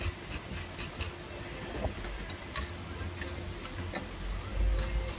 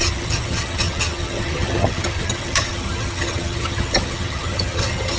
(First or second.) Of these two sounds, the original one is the first